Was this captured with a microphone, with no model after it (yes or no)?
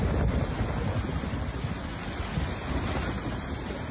yes